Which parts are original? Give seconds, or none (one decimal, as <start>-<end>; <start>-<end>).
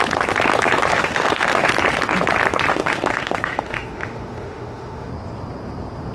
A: 0.0-0.9; 1.7-2.7; 5.1-6.1